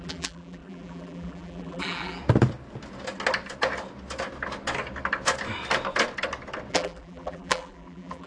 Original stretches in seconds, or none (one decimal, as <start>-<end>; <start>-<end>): 2.2-6.7